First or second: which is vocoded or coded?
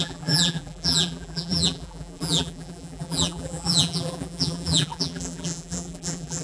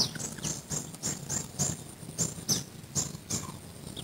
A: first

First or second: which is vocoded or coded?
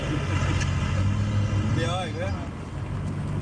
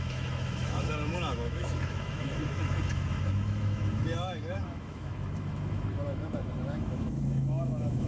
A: second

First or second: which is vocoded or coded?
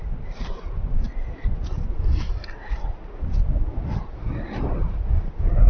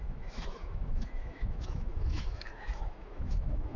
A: second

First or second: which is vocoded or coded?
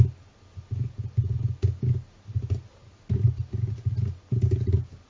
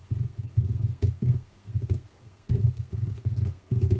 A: second